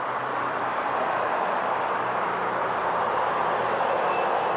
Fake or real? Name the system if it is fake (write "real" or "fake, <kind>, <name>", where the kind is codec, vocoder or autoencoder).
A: real